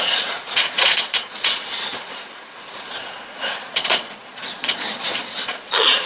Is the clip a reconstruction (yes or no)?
yes